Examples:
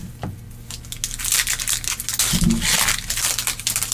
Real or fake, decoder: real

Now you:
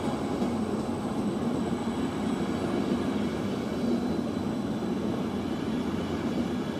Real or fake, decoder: real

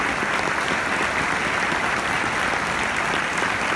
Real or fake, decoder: real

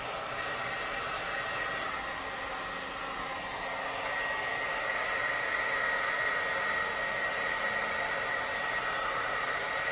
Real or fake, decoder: real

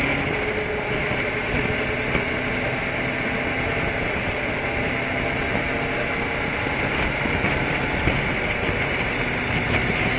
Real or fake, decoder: real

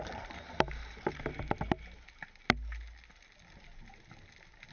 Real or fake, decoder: real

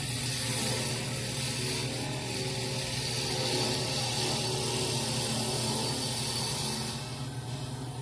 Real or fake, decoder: real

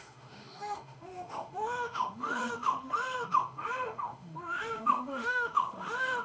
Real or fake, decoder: fake, autoencoder, DAC-VAE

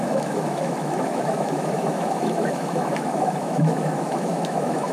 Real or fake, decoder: fake, autoencoder, DAC-VAE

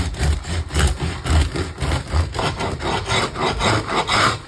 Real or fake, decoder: real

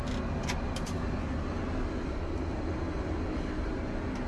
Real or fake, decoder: real